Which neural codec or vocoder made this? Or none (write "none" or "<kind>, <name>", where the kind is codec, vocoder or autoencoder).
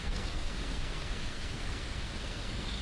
codec, SNAC